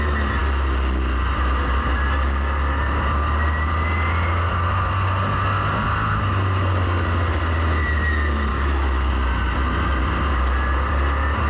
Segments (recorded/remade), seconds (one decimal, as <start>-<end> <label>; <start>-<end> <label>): 0.0-8.5 recorded; 8.5-9.1 remade; 9.1-11.5 recorded